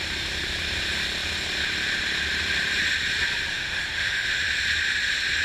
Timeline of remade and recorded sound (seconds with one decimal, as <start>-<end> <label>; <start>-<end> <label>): 0.0-3.5 recorded; 3.5-4.4 remade; 4.4-5.4 recorded